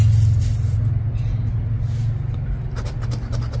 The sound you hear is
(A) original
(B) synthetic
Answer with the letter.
A